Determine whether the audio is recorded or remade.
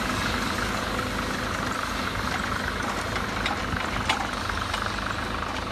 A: recorded